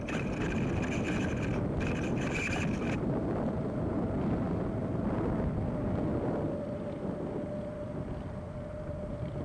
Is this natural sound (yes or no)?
yes